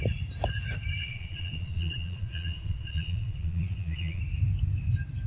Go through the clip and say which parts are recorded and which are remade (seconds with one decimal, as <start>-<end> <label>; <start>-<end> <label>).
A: 0.0-1.0 recorded; 1.0-4.2 remade; 4.2-5.3 recorded